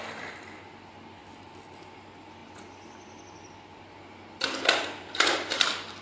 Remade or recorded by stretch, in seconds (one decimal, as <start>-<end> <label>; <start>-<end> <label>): 0.0-6.0 recorded